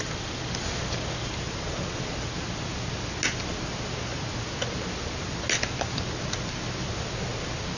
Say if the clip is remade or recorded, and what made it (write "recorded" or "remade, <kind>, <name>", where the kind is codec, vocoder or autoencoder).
recorded